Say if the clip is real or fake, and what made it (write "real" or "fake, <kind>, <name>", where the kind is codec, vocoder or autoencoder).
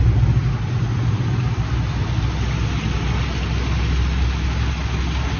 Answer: real